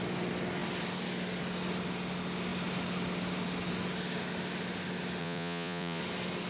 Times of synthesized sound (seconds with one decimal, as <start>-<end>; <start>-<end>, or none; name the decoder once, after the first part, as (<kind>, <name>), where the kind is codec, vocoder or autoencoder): 5.2-6.0 (vocoder, Vocos)